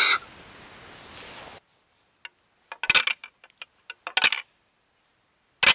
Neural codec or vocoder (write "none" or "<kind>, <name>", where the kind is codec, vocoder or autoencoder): none